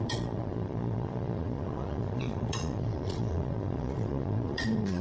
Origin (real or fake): fake